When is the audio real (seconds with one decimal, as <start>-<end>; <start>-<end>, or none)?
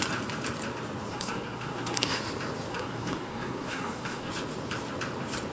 0.0-1.1; 2.2-2.7; 4.3-5.5